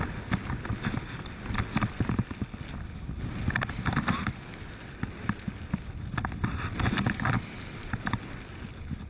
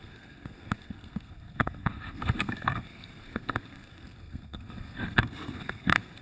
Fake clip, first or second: second